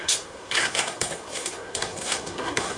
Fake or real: fake